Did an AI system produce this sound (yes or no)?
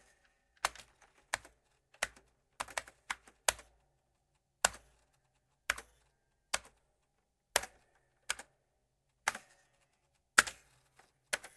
no